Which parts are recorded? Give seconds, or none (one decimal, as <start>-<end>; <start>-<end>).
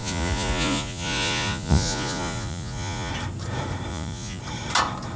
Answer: 3.1-3.9; 4.4-5.2